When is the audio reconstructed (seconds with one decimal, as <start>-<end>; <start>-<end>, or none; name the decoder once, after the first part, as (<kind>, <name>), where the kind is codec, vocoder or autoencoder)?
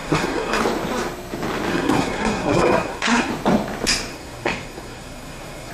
0.0-0.6 (codec, SNAC); 1.7-3.3; 4.1-5.7